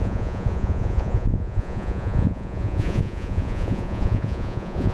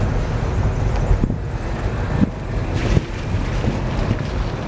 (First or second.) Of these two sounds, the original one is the second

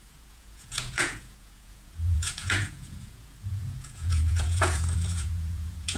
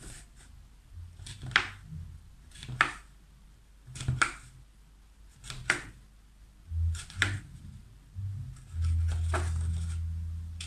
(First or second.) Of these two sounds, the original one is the second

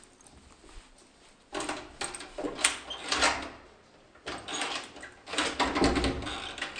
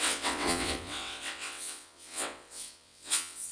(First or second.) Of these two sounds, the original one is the first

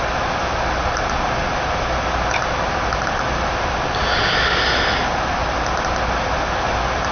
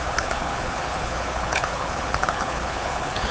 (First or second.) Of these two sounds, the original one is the first